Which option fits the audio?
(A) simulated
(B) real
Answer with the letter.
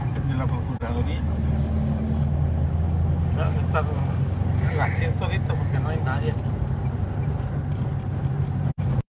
B